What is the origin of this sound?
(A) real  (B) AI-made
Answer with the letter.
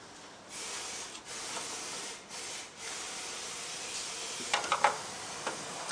A